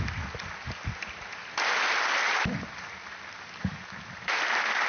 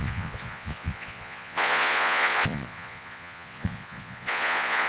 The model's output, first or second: second